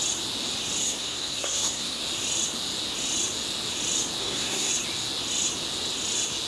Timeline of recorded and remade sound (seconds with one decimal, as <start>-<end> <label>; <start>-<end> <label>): 0.0-0.8 recorded; 0.8-2.0 remade; 2.0-4.2 recorded; 4.2-4.7 remade; 4.7-6.5 recorded